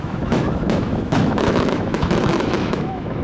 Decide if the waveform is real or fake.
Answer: fake